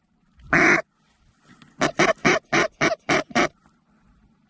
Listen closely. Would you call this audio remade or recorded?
recorded